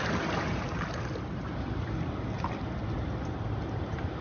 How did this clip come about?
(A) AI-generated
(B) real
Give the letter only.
B